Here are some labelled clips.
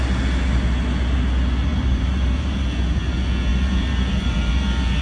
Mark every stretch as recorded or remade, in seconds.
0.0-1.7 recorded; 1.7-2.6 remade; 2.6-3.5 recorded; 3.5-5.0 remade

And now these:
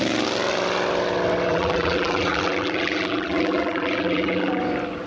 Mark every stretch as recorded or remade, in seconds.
0.0-1.5 recorded; 1.5-4.6 remade; 4.6-5.1 recorded

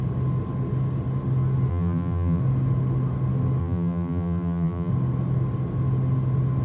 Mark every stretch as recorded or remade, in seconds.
0.0-1.7 recorded; 1.7-2.4 remade; 2.4-3.6 recorded; 3.6-4.9 remade; 4.9-6.6 recorded